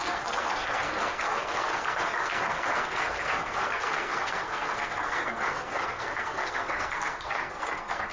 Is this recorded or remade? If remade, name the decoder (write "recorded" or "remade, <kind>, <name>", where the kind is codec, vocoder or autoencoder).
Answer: remade, codec, SNAC